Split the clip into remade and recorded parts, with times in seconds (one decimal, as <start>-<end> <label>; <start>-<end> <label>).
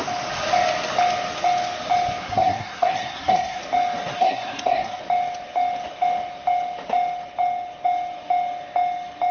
0.0-2.2 recorded; 2.2-3.6 remade; 3.6-4.1 recorded; 4.1-5.0 remade; 5.0-9.3 recorded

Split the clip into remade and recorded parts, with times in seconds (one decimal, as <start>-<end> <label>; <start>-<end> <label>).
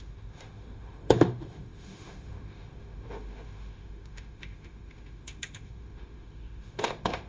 0.0-7.3 remade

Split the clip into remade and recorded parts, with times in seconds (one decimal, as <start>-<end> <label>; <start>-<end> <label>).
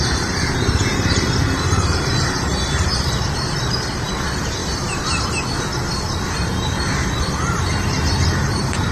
0.0-4.6 remade; 4.6-6.3 recorded; 6.3-8.9 remade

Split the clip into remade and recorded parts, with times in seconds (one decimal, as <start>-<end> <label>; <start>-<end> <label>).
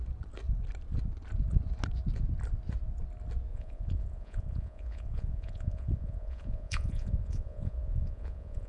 0.0-3.5 recorded; 3.5-8.7 remade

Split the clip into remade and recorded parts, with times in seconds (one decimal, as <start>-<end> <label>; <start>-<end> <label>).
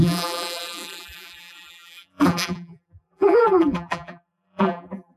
0.0-5.2 remade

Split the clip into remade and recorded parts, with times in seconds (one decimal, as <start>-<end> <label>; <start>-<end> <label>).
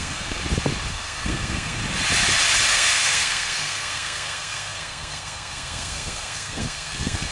0.0-0.4 remade; 0.4-0.9 recorded; 0.9-1.8 remade; 1.8-2.7 recorded; 2.7-7.3 remade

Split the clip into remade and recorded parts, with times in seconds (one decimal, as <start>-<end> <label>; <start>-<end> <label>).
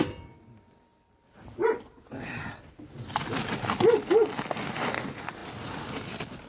0.0-6.5 recorded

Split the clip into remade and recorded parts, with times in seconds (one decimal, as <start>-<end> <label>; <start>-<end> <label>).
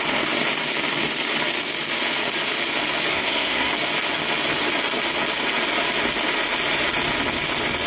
0.0-3.1 recorded; 3.1-3.7 remade; 3.7-7.9 recorded